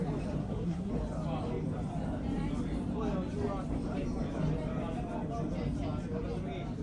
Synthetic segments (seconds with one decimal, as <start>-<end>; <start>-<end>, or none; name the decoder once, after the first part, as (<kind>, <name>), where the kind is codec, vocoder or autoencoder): 0.4-0.9 (codec, SNAC)